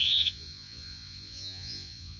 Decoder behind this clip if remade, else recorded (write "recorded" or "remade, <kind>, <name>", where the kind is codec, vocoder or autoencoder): remade, vocoder, Vocos